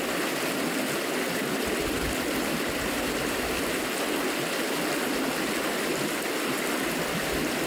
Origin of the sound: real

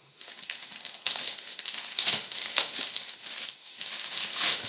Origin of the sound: fake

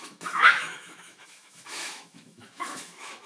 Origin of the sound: fake